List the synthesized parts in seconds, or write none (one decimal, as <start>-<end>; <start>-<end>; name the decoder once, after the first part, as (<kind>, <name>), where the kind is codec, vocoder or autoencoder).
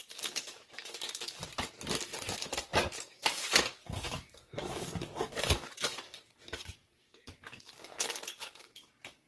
0.0-1.4 (codec, DAC); 3.0-9.3